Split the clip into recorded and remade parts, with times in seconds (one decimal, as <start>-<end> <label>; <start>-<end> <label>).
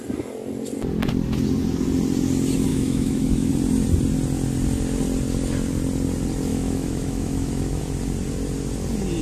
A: 0.0-2.7 recorded; 2.7-3.5 remade; 3.5-6.5 recorded; 6.5-7.8 remade; 7.8-9.2 recorded